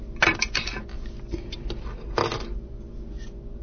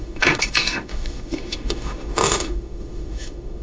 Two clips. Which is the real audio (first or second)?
first